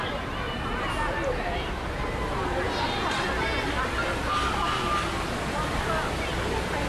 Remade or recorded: recorded